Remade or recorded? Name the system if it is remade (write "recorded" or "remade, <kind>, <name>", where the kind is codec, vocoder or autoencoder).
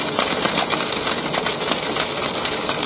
recorded